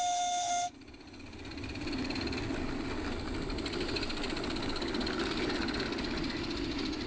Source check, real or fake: real